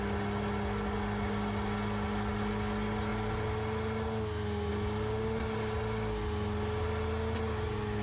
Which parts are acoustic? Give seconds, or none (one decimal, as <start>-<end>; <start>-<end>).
0.0-8.0